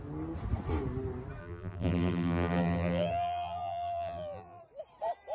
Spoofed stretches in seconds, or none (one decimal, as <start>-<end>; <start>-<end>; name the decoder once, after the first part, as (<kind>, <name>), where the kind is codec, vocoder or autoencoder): 1.4-4.6 (vocoder, BigVGAN v2)